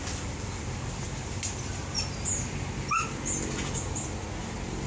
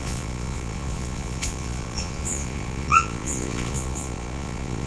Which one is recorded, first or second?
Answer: first